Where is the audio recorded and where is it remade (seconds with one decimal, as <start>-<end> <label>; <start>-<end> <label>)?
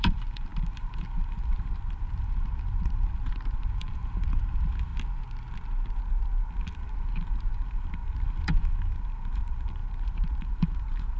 0.0-4.9 remade; 4.9-6.6 recorded; 6.6-11.2 remade